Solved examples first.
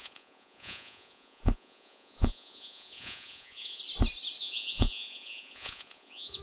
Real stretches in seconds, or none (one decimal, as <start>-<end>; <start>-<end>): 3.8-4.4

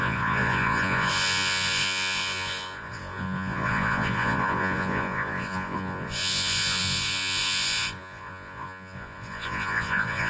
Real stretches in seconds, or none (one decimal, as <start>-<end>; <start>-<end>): none

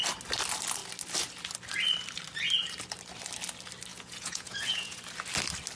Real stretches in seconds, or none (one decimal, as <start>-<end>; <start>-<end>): 0.0-3.9; 5.0-5.8

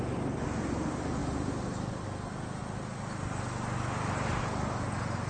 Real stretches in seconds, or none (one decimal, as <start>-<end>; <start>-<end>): 0.0-5.3